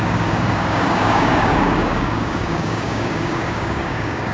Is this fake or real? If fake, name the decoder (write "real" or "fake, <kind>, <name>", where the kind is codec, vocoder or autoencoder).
fake, codec, DAC